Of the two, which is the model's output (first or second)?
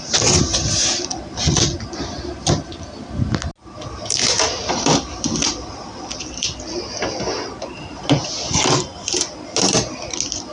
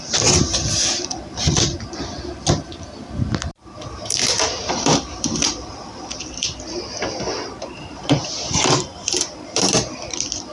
second